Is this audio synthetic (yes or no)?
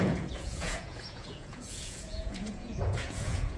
yes